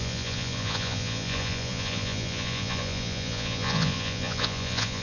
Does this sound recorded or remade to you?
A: remade